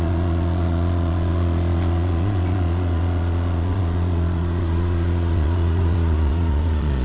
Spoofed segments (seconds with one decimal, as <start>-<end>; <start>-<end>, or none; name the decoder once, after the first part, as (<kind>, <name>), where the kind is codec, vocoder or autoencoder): 0.0-7.0 (vocoder, Vocos)